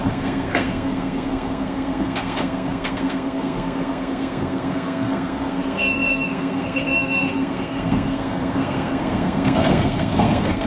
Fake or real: fake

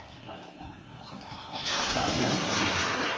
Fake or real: fake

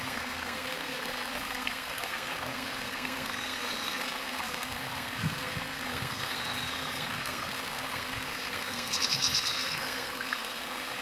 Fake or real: fake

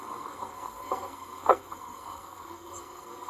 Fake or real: fake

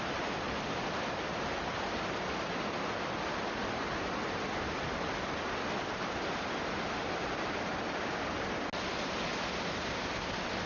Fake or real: real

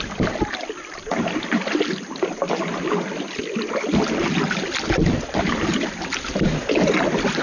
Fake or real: real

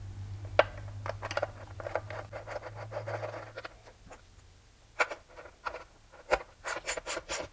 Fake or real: real